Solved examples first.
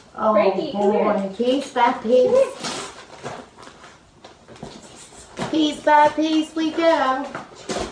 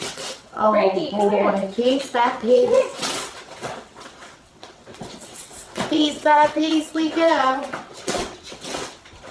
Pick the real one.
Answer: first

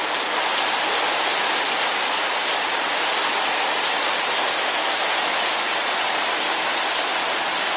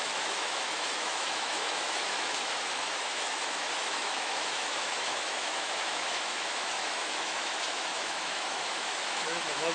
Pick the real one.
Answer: first